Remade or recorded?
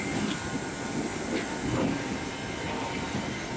recorded